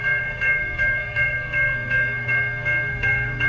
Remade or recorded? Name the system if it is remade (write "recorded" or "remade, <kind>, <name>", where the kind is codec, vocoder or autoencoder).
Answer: remade, codec, SNAC